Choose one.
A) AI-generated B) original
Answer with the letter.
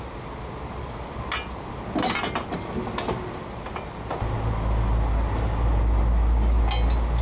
B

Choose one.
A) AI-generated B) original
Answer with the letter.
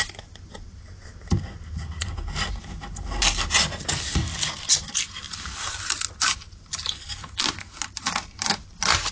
B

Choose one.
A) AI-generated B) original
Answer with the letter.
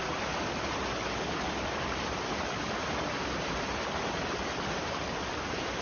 B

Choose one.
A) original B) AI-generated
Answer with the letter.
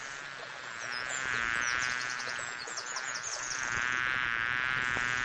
A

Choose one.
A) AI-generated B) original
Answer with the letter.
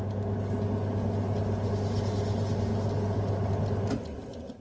B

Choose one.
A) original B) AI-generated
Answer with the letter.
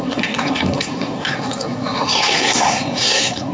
B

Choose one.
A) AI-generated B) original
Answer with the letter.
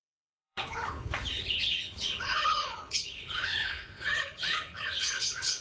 A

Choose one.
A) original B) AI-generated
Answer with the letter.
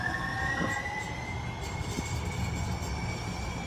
A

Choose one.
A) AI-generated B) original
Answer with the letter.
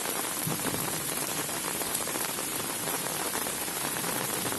A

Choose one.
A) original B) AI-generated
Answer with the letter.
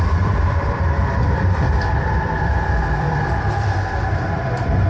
B